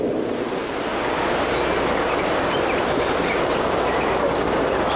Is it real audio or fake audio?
real